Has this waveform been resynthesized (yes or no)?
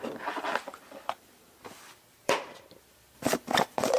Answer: yes